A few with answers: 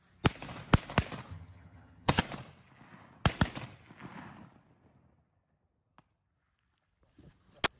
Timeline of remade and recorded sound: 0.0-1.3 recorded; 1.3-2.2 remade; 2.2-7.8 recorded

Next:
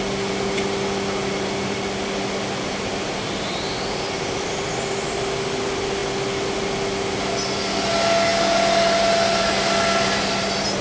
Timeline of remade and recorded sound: 0.0-10.8 recorded